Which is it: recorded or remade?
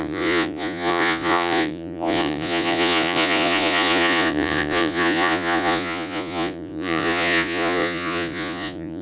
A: remade